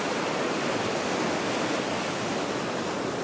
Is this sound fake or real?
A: real